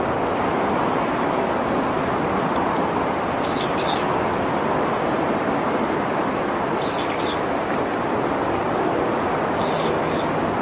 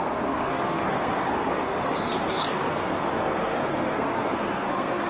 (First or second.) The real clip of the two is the first